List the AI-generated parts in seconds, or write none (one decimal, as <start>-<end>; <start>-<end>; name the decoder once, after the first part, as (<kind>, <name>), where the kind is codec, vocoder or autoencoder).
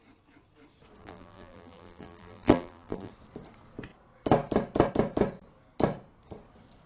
1.0-3.1 (vocoder, BigVGAN v2)